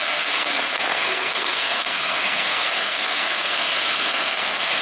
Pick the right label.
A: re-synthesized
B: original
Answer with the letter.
A